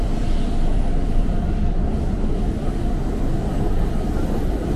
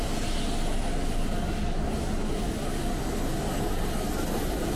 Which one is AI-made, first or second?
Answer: first